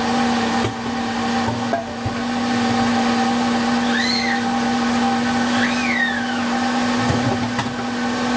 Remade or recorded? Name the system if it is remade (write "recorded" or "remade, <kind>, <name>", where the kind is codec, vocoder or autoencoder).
recorded